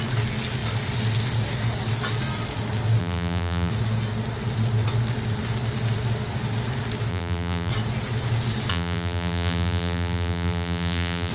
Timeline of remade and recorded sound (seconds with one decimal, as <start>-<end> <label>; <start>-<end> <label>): 0.0-3.0 recorded; 3.0-3.7 remade; 3.7-7.1 recorded; 7.1-7.7 remade; 7.7-8.7 recorded; 8.7-11.3 remade